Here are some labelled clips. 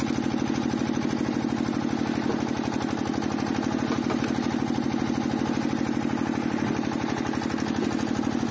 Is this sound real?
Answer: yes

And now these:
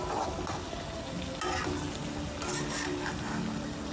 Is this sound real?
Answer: yes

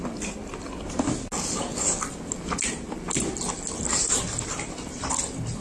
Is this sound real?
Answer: yes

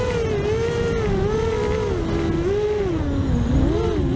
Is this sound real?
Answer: yes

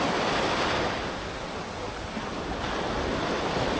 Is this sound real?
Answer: yes